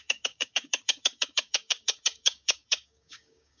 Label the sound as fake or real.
fake